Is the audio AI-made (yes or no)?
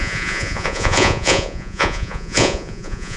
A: yes